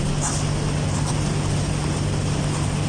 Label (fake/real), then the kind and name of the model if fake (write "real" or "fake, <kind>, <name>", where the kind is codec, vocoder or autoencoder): real